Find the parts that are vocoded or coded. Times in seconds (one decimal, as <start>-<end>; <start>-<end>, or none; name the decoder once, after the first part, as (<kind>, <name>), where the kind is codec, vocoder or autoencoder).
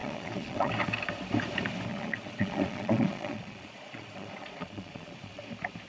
0.0-0.7 (vocoder, Vocos); 1.9-5.4